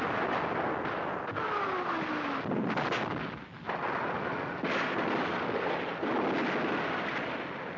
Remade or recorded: recorded